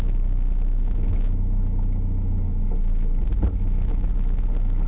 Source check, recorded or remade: recorded